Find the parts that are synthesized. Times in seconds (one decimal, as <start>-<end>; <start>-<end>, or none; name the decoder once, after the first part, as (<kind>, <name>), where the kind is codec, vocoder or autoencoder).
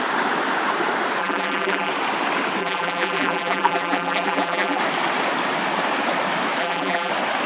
1.2-1.9 (vocoder, BigVGAN v2); 2.6-4.8; 6.6-7.1